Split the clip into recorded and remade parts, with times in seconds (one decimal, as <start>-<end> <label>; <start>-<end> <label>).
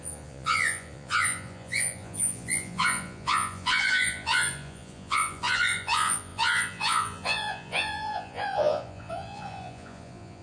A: 0.0-10.4 remade